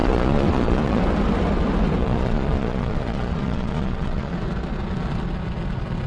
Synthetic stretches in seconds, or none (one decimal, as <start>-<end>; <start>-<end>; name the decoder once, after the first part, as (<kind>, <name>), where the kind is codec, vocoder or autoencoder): 0.0-1.0 (vocoder, Vocos); 2.0-4.3